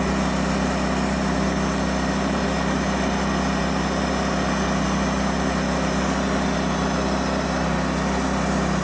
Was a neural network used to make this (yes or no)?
no